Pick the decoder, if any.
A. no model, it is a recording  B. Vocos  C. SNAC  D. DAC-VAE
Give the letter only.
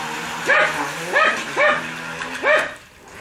A